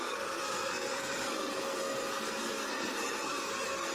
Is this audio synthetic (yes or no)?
yes